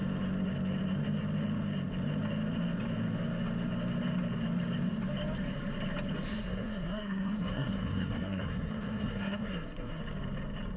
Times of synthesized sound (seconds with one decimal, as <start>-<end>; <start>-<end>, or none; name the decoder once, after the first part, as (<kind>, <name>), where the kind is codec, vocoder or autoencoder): 6.3-10.0 (codec, SNAC)